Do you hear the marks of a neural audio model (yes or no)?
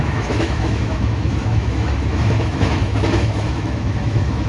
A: yes